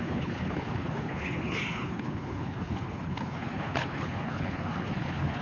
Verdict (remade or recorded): remade